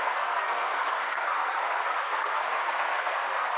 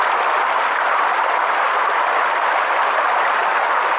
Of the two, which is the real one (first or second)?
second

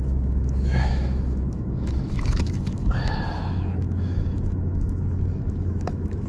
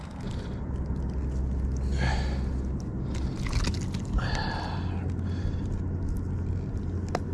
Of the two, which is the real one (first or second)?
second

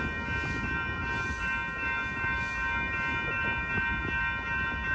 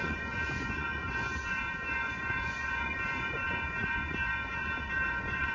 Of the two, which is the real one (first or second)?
first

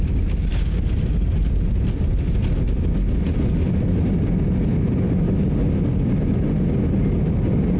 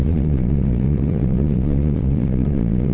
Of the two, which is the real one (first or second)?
first